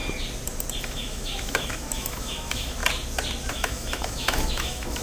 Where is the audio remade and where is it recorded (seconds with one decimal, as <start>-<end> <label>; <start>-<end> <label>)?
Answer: 0.0-0.8 recorded; 0.8-2.8 remade; 2.8-3.5 recorded; 3.5-5.0 remade